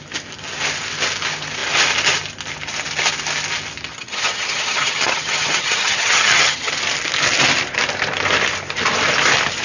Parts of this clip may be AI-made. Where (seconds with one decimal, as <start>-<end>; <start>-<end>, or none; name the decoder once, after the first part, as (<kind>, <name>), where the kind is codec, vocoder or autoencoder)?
3.9-6.7 (vocoder, HiFi-GAN)